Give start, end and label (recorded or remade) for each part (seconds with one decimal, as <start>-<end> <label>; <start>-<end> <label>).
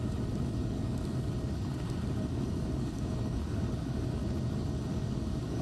0.0-4.2 remade; 4.2-4.9 recorded; 4.9-5.6 remade